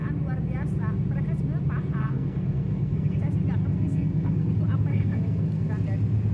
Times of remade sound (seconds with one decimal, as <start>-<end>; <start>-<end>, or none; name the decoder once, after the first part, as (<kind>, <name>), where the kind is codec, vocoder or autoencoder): 2.0-3.2 (codec, SNAC); 3.7-4.5; 4.9-5.7